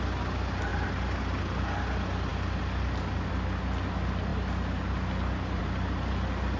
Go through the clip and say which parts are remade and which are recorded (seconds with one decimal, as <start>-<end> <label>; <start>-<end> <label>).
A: 0.0-6.6 recorded